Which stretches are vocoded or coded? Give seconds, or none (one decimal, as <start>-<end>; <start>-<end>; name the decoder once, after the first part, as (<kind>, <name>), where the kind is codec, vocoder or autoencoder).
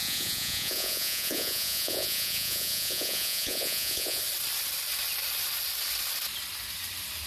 0.0-4.2 (vocoder, Vocos)